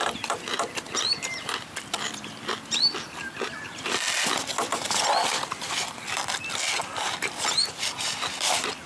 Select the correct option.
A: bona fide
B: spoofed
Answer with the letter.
A